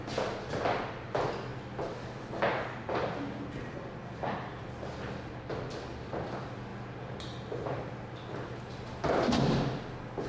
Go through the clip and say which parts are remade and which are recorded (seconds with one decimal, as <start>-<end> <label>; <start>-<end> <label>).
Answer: 0.0-10.3 recorded